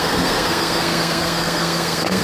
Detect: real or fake fake